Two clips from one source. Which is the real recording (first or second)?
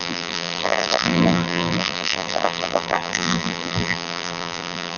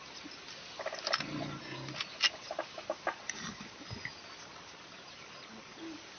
second